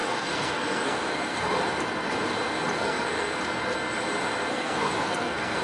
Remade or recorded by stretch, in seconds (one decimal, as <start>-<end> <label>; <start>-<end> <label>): 0.0-1.5 remade; 1.5-2.8 recorded; 2.8-3.4 remade; 3.4-4.5 recorded; 4.5-5.6 remade